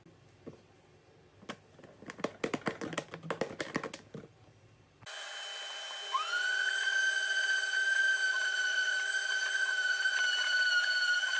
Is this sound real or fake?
real